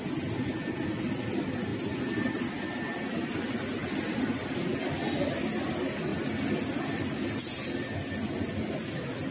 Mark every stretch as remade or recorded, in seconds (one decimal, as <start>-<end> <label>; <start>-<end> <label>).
0.0-1.7 recorded; 1.7-2.4 remade; 2.4-3.8 recorded; 3.8-4.5 remade; 4.5-6.1 recorded; 6.1-6.9 remade; 6.9-9.3 recorded